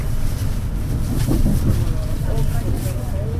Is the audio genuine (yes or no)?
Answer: no